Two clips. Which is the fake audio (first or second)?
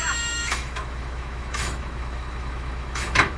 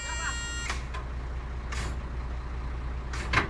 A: first